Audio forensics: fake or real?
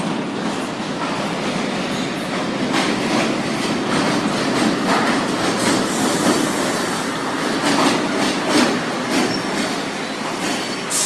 real